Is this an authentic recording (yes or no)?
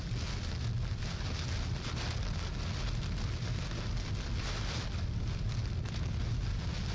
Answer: yes